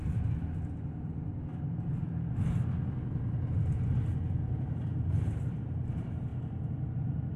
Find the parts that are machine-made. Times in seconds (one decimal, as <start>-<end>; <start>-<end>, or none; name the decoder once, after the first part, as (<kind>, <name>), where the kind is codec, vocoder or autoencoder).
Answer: 1.0-2.0 (vocoder, BigVGAN v2); 4.9-5.6; 6.3-7.4